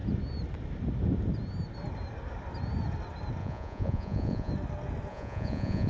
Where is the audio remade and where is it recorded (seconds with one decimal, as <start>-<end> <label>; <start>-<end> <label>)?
0.0-3.4 recorded; 3.4-4.5 remade; 4.5-5.1 recorded; 5.1-5.9 remade